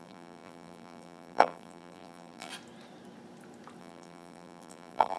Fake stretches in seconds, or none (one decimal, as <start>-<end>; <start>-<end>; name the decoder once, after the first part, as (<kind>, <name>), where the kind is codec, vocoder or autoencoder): 0.0-2.5 (vocoder, BigVGAN v2); 3.8-5.2